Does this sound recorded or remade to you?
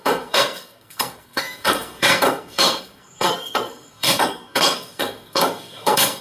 remade